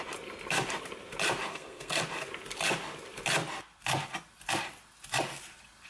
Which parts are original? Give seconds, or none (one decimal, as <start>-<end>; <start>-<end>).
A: 0.0-1.5; 2.0-5.9